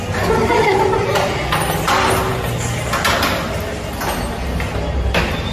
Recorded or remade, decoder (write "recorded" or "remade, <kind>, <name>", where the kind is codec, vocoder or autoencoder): recorded